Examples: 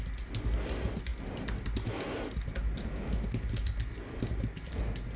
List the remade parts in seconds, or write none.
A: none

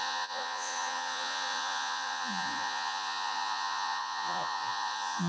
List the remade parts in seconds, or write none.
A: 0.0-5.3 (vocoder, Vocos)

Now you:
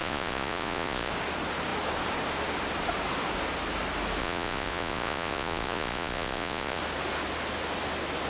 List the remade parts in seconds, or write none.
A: 0.0-1.1 (vocoder, Vocos); 4.2-6.8

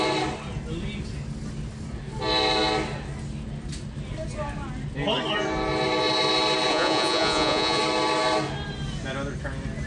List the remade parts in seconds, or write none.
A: 6.7-7.8 (vocoder, Vocos)

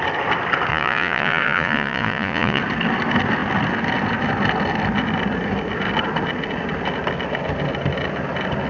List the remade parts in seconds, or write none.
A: 0.7-2.6 (vocoder, Vocos)

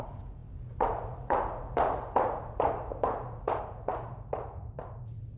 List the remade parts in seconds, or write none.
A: 0.0-5.4 (vocoder, Vocos)